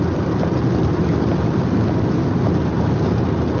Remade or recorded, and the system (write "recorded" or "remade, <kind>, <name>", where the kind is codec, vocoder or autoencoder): recorded